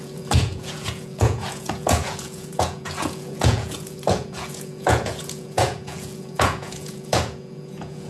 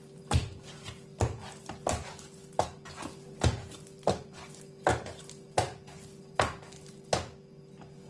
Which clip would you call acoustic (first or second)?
second